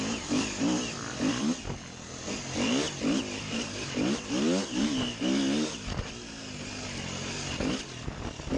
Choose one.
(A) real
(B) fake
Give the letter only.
A